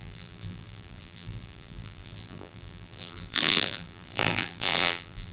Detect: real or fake fake